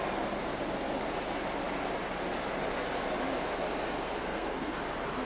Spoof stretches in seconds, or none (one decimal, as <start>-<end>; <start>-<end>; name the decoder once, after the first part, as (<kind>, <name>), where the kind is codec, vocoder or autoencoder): 4.2-4.7 (codec, SNAC)

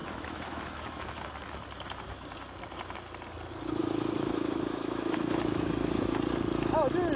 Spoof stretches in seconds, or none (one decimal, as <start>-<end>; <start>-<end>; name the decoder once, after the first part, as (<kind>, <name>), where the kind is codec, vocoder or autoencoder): 0.0-1.2 (autoencoder, DAC-VAE); 3.8-6.0

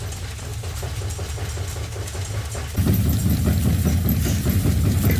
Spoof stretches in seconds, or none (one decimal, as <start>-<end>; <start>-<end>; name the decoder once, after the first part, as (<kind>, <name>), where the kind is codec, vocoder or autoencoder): 0.5-1.1 (vocoder, BigVGAN v2)